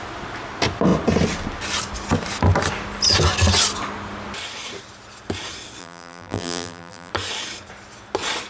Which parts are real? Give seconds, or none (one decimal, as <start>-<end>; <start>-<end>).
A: 0.0-5.8; 7.1-8.5